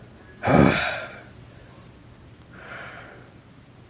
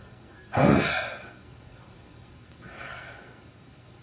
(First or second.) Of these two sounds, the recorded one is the first